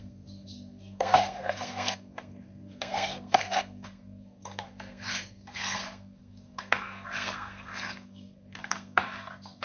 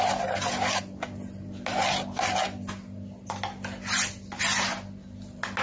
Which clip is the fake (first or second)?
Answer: first